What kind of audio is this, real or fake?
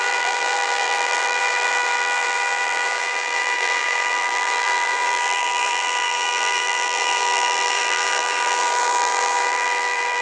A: fake